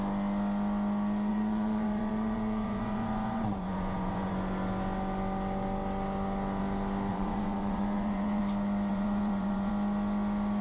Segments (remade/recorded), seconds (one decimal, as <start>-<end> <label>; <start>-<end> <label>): 0.0-1.3 recorded; 1.3-4.3 remade; 4.3-7.1 recorded; 7.1-8.4 remade; 8.4-8.9 recorded; 8.9-9.7 remade; 9.7-10.6 recorded